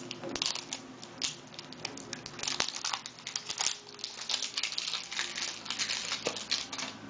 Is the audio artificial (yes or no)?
no